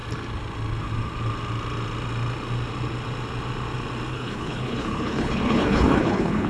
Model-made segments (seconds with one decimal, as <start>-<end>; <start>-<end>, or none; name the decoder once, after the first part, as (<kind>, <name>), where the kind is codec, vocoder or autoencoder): 4.1-6.5 (codec, HILCodec)